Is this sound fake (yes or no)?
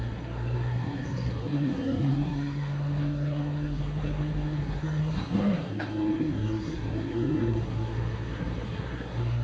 yes